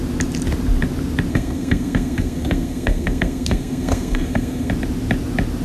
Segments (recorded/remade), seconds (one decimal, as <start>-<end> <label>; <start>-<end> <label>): 0.0-1.3 recorded; 1.3-4.7 remade; 4.7-5.6 recorded